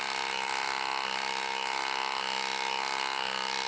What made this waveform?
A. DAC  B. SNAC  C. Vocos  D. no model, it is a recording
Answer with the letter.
D